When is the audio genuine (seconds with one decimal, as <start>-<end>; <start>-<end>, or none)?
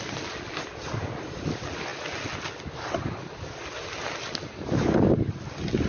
0.0-5.9